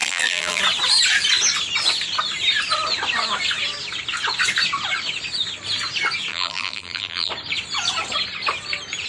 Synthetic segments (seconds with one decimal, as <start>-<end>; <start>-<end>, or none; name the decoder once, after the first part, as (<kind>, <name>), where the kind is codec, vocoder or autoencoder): 0.0-0.6 (vocoder, BigVGAN v2); 6.3-7.3